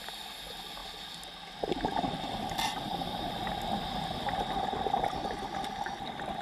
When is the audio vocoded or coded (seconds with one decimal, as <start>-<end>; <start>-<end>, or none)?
none